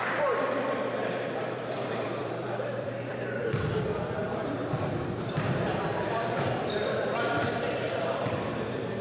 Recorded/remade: remade